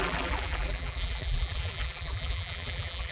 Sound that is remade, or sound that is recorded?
remade